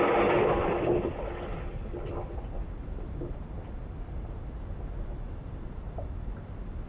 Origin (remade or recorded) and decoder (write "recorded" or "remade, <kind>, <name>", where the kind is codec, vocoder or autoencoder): recorded